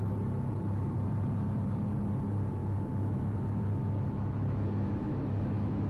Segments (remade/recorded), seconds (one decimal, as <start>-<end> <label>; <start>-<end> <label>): 0.0-2.6 recorded; 2.6-5.9 remade